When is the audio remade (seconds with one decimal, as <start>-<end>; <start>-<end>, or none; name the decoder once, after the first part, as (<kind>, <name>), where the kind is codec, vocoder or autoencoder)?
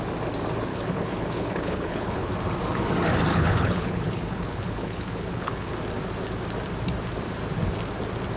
0.7-2.3 (codec, HILCodec); 3.3-5.7